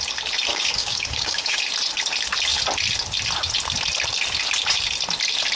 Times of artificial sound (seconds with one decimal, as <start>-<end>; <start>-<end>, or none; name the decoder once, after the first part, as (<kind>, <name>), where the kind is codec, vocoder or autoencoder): 0.5-1.6 (codec, DAC)